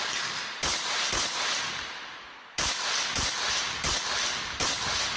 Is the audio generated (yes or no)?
no